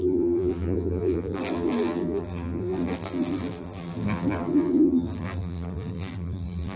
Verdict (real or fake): fake